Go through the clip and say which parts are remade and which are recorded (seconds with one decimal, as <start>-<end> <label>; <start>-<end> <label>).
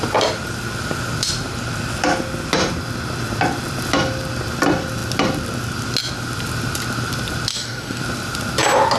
0.0-7.5 recorded; 7.5-8.0 remade; 8.0-9.0 recorded